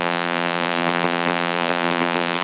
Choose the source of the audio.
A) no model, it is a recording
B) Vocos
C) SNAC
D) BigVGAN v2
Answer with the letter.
D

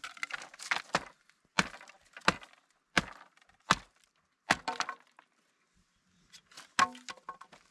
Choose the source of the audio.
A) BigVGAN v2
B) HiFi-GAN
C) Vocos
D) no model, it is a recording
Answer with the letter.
D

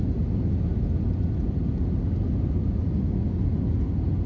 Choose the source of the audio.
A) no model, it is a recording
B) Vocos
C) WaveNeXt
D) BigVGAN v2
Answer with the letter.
A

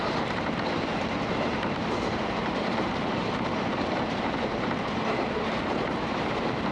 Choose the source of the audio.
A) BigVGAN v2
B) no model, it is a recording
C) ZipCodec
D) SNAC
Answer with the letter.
A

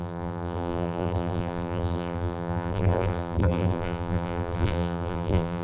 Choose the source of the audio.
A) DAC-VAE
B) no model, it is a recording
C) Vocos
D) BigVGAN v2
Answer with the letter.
D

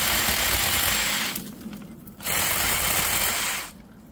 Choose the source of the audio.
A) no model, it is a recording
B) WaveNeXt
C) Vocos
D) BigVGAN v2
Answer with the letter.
A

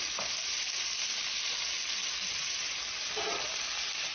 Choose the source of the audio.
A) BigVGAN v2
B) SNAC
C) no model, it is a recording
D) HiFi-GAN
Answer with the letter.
C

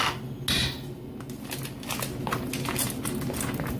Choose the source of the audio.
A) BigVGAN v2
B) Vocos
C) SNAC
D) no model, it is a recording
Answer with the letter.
D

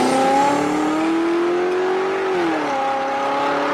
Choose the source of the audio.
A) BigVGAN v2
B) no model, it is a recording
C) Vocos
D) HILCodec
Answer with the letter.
B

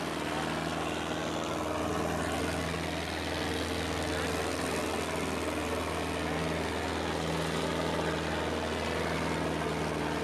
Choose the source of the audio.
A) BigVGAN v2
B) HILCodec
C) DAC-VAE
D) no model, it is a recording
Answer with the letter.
D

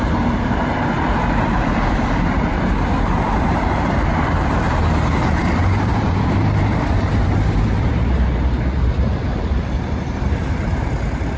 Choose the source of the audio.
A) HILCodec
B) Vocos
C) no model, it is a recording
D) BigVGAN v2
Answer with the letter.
D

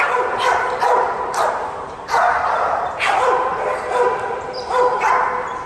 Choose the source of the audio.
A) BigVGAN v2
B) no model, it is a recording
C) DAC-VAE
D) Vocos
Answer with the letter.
A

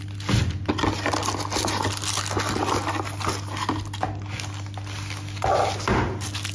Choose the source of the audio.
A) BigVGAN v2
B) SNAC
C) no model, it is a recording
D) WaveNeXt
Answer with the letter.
C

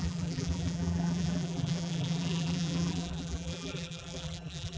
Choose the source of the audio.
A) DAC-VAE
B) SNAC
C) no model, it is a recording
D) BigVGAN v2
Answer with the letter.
D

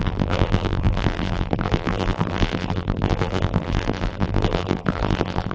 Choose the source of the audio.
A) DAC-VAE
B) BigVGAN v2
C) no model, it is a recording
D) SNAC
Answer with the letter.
B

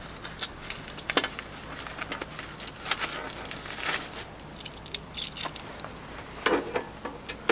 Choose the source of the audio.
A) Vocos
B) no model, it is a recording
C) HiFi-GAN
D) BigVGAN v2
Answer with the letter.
B